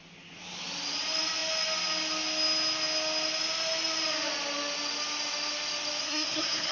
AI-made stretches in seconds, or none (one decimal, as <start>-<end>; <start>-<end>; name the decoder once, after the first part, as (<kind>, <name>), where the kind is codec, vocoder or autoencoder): 6.0-6.7 (codec, SNAC)